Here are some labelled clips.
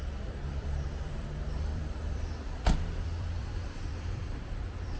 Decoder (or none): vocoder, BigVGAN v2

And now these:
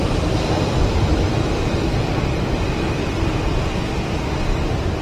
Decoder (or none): none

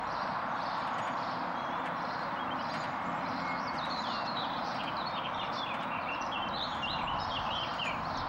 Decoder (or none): vocoder, BigVGAN v2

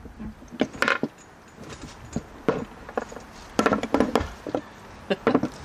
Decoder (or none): none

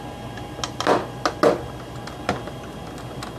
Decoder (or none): none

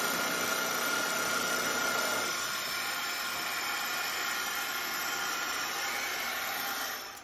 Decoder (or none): none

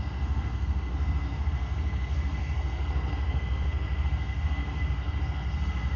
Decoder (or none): codec, SNAC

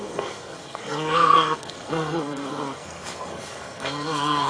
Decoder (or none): codec, SNAC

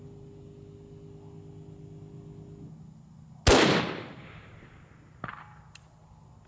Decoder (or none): none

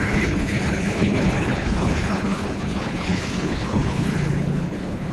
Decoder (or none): codec, HILCodec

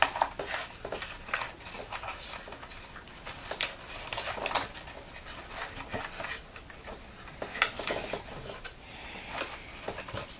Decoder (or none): none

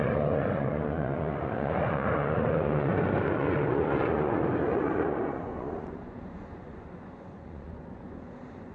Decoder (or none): vocoder, Vocos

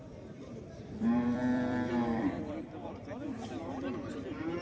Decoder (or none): vocoder, BigVGAN v2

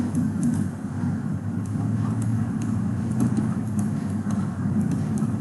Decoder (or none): codec, DAC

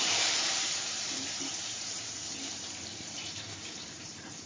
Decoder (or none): vocoder, BigVGAN v2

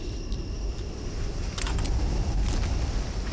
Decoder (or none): none